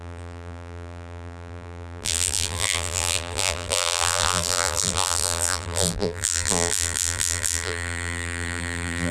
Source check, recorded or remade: remade